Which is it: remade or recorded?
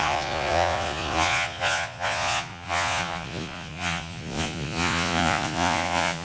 remade